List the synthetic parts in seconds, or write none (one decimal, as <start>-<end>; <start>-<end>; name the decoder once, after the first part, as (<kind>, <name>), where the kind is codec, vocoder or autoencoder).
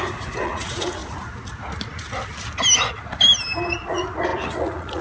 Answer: 0.0-1.0 (vocoder, Vocos); 3.9-5.0